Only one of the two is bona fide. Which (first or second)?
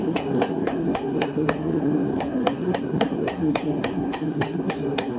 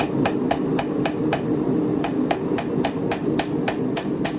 second